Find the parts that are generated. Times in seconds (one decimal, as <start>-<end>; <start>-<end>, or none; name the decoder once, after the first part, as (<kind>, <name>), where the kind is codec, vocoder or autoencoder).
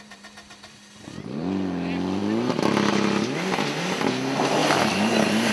4.6-5.1 (vocoder, BigVGAN v2)